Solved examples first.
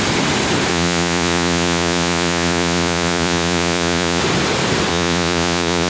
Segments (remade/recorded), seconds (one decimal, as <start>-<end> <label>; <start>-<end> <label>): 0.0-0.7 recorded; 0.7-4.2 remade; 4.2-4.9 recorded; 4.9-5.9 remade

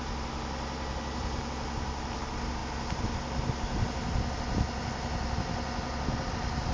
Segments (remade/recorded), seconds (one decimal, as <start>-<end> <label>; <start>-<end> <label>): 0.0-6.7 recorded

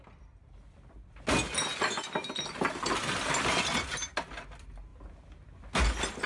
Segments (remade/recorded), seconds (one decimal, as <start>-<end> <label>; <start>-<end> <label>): 0.0-6.3 recorded

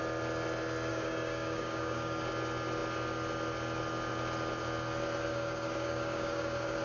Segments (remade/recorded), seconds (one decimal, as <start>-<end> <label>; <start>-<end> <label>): 0.0-0.9 recorded; 0.9-2.2 remade; 2.2-5.3 recorded; 5.3-6.8 remade

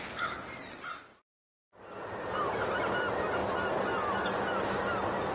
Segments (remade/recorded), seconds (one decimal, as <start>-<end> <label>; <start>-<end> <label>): 0.0-1.1 recorded; 1.1-2.9 remade; 2.9-5.3 recorded

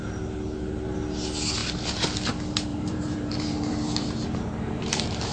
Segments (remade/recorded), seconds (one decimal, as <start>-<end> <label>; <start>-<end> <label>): 0.0-2.7 recorded; 2.7-5.3 remade

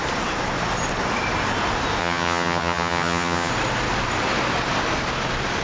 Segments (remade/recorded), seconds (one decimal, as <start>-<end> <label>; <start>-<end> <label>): 0.0-2.0 recorded; 2.0-3.5 remade; 3.5-5.6 recorded